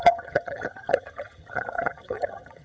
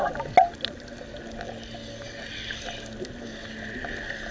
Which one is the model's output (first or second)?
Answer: first